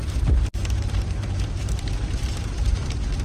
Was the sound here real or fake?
fake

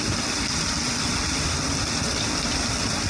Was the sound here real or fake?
real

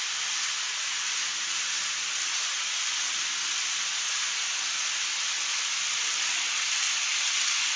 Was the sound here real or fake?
real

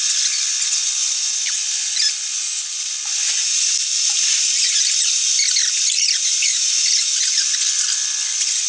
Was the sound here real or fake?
real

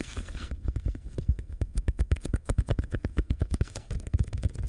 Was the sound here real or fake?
fake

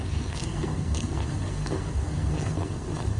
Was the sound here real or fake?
fake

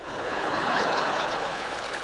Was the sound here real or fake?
fake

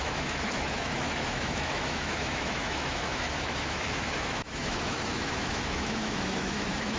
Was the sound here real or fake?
fake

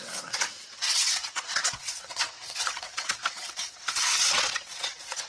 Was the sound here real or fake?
fake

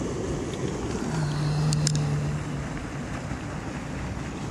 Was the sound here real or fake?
real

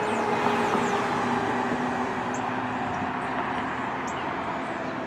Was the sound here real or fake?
real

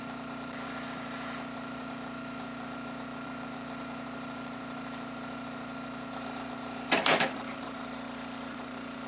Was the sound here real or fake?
fake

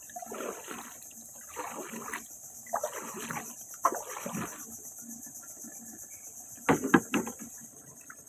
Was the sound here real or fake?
real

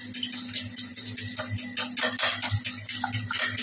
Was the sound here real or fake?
real